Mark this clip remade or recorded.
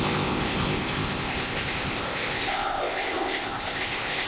remade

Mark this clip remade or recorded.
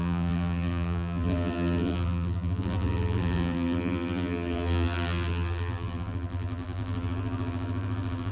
remade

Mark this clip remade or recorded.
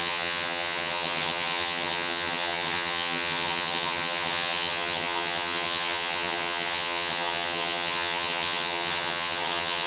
remade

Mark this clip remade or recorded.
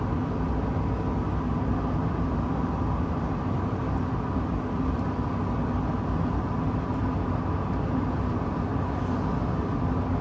recorded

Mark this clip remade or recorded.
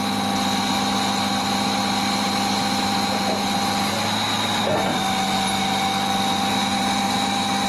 recorded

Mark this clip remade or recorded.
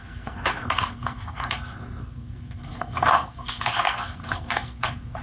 remade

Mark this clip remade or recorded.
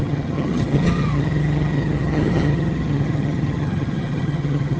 remade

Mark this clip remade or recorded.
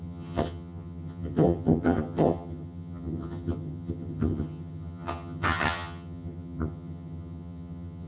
remade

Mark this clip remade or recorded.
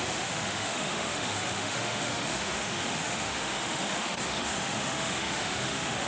remade